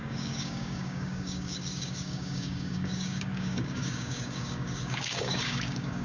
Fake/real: fake